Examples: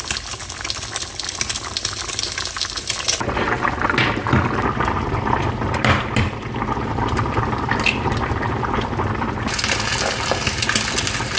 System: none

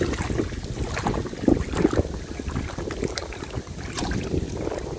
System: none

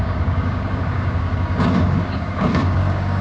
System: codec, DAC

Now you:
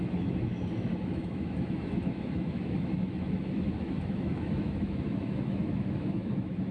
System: autoencoder, DAC-VAE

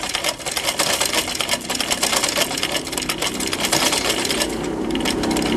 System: none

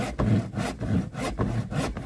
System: none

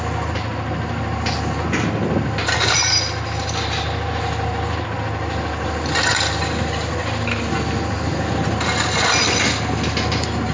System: none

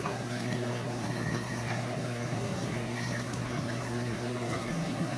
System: codec, SNAC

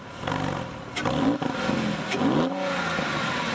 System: none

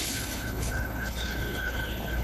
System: codec, HILCodec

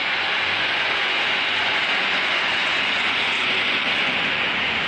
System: vocoder, Vocos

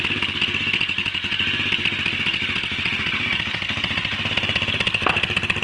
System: none